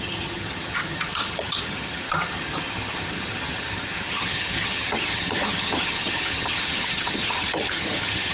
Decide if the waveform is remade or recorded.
remade